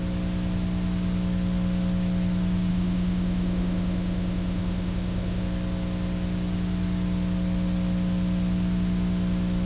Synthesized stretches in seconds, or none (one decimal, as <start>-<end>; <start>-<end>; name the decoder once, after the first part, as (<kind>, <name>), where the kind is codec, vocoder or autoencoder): 2.7-5.4 (autoencoder, DAC-VAE)